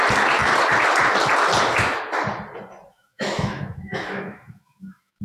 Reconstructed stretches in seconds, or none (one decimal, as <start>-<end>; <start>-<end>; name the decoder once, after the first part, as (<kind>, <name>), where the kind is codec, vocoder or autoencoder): 2.9-5.2 (autoencoder, DAC-VAE)